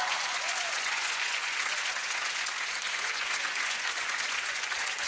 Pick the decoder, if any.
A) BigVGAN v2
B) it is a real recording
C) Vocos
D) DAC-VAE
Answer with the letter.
C